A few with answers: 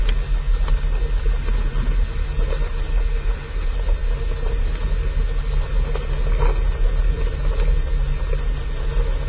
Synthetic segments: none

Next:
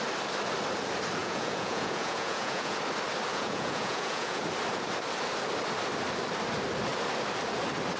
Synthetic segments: 1.2-2.8; 3.3-4.4

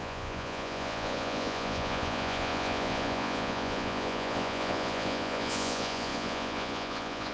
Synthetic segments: 0.0-7.3

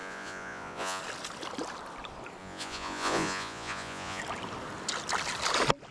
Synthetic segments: 0.0-1.0; 2.4-4.2